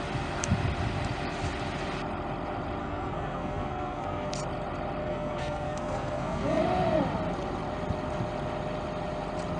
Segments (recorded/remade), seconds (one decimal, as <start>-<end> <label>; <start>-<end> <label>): 0.0-2.8 recorded; 2.8-4.3 remade; 4.3-5.0 recorded; 5.0-6.6 remade; 6.6-9.6 recorded